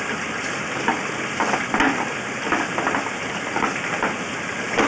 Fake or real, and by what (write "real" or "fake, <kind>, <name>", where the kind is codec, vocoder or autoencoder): real